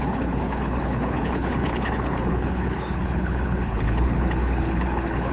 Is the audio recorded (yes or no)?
no